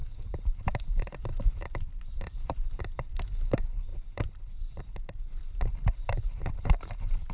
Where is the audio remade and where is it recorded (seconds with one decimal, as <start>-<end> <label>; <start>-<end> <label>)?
0.0-0.6 recorded; 0.6-7.3 remade